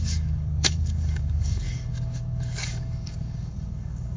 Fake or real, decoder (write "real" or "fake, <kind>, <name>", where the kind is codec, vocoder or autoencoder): fake, codec, DAC